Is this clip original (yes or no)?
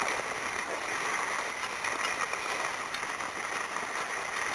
yes